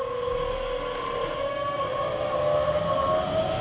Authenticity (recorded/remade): recorded